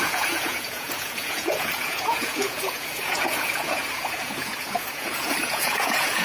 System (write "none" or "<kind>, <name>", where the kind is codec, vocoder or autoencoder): vocoder, Vocos